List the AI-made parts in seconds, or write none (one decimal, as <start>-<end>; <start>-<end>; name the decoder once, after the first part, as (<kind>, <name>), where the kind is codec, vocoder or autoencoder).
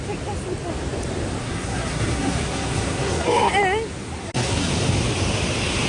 1.4-3.5 (codec, SNAC); 4.2-4.7